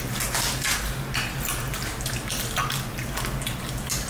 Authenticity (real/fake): real